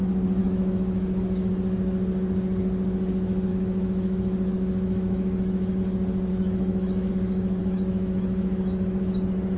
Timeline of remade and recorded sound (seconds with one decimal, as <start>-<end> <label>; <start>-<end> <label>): 0.0-0.4 recorded; 0.4-1.5 remade; 1.5-3.5 recorded; 3.5-5.8 remade; 5.8-6.3 recorded; 6.3-7.1 remade; 7.1-7.6 recorded; 7.6-9.0 remade; 9.0-9.6 recorded